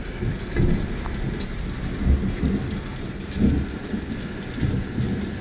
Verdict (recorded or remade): recorded